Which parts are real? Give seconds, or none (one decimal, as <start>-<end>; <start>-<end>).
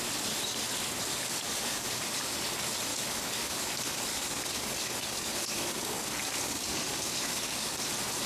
0.0-1.1; 2.3-2.9; 7.9-8.3